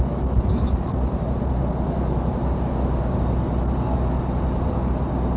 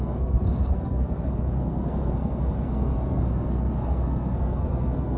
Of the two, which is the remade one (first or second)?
second